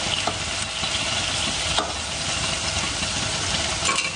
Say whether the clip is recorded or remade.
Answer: recorded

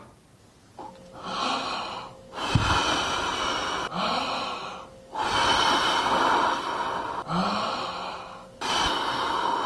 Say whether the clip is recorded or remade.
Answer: recorded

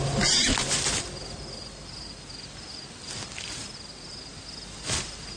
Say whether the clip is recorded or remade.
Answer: recorded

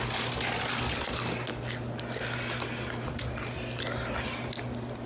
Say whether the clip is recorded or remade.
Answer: recorded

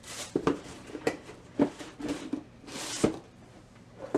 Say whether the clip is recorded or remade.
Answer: remade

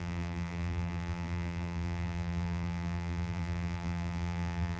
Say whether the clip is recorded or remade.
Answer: remade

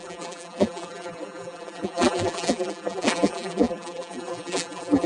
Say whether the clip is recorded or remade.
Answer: remade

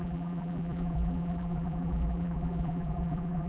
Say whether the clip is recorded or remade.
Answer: remade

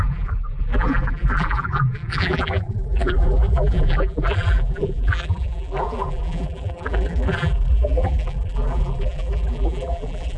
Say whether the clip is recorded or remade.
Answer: remade